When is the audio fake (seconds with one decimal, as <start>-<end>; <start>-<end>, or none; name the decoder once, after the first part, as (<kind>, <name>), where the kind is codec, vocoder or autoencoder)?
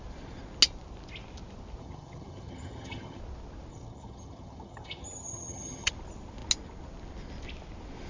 1.8-3.2 (vocoder, HiFi-GAN); 3.7-5.9